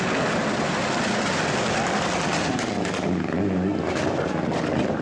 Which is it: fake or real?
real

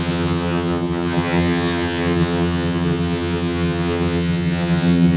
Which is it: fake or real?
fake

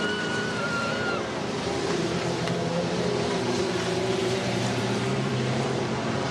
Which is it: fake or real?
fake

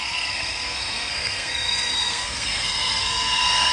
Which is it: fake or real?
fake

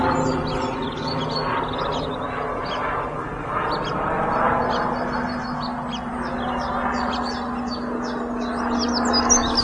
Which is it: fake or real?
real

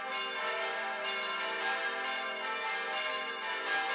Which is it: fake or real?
real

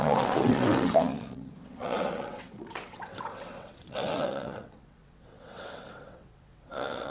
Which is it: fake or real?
fake